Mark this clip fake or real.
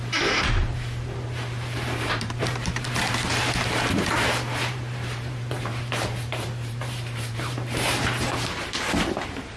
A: fake